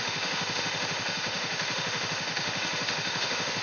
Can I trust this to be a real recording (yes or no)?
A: no